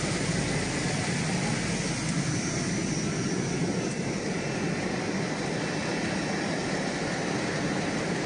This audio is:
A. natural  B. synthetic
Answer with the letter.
A